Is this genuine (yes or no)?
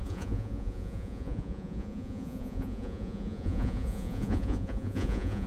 no